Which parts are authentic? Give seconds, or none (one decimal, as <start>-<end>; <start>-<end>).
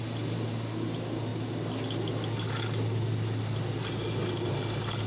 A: 0.0-5.1